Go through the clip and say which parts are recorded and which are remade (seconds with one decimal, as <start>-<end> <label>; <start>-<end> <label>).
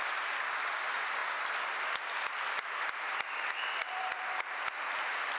0.0-5.4 recorded